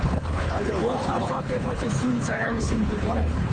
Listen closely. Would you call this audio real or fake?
fake